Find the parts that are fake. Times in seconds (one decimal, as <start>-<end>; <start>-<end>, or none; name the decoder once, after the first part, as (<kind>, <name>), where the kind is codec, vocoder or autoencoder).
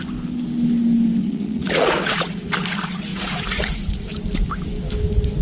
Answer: 1.2-2.5 (vocoder, Vocos); 3.1-4.1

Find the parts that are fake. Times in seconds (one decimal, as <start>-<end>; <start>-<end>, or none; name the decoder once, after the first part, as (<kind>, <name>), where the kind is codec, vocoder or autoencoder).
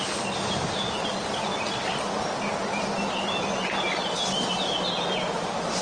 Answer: none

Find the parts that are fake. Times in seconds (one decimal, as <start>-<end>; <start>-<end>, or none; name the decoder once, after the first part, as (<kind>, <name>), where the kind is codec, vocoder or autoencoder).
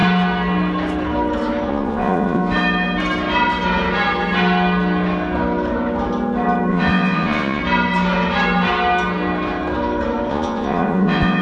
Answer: 1.7-2.4 (vocoder, Vocos); 6.7-7.6; 10.3-11.4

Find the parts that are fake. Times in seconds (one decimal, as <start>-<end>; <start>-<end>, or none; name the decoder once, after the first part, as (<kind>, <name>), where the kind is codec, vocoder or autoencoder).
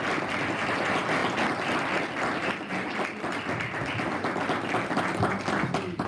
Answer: none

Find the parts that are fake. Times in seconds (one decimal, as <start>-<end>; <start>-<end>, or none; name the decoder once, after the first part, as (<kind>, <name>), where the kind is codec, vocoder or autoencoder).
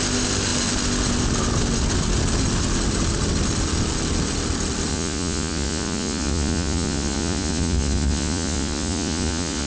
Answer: 4.9-9.7 (vocoder, Vocos)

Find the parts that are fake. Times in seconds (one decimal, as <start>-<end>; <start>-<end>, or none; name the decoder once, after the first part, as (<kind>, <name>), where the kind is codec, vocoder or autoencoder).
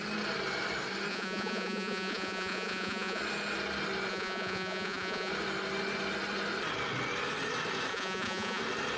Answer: 1.1-3.2 (vocoder, Vocos); 4.1-5.3; 7.9-8.6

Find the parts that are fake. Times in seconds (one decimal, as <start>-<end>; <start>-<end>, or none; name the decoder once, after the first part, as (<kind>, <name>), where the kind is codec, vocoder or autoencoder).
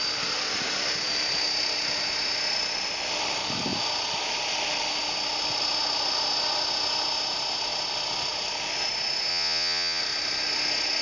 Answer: 9.3-10.0 (vocoder, Vocos)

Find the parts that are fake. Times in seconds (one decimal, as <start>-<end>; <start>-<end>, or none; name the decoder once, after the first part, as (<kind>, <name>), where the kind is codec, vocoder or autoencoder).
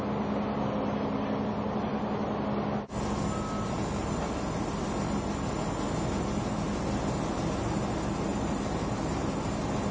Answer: none